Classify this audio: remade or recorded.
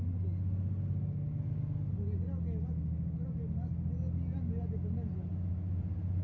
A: recorded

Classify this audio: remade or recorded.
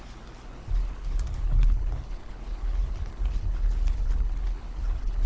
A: remade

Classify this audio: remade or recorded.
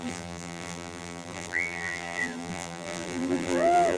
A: remade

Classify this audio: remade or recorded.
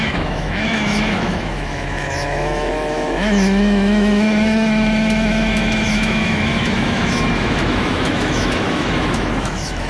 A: remade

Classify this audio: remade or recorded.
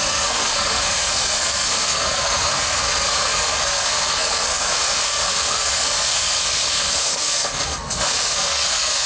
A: remade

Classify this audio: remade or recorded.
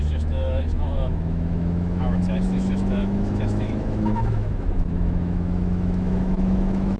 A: remade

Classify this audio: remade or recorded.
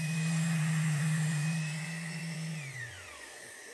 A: remade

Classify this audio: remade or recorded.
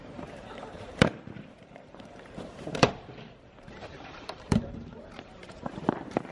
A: remade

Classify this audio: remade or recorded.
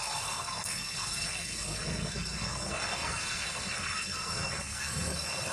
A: remade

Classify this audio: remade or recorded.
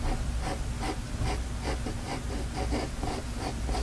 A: recorded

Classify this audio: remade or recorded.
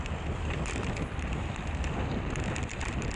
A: remade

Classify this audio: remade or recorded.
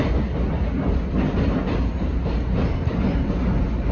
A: recorded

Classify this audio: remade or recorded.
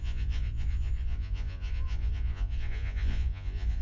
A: remade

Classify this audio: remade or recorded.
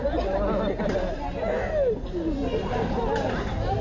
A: recorded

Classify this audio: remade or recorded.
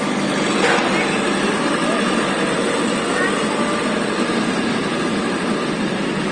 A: recorded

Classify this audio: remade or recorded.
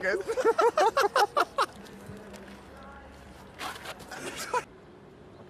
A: recorded